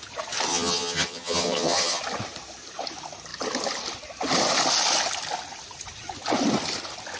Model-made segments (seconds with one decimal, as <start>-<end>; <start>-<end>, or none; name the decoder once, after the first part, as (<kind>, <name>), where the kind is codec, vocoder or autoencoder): 0.5-2.0 (vocoder, HiFi-GAN)